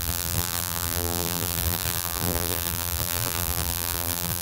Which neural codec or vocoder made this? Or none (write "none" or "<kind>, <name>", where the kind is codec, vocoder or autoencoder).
vocoder, BigVGAN v2